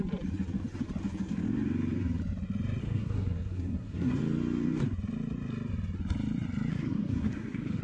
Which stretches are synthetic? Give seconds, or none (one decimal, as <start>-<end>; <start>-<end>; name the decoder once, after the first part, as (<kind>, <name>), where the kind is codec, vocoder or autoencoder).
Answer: 2.8-4.2 (codec, SNAC); 6.7-7.8